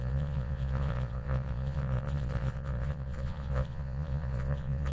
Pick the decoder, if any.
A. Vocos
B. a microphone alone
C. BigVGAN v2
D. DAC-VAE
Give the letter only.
A